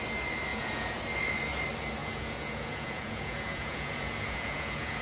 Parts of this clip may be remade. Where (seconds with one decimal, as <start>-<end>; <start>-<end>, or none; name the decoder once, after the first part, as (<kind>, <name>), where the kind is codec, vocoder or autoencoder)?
0.5-1.0 (vocoder, Vocos); 2.0-5.0